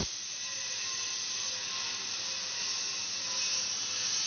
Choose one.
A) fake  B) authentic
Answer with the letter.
B